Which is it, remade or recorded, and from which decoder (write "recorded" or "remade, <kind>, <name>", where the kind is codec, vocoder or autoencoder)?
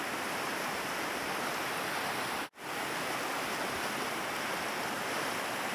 recorded